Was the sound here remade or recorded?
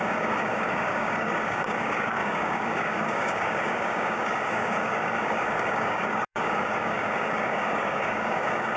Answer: remade